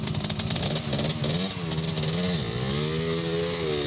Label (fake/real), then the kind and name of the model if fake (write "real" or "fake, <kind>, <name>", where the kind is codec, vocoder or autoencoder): real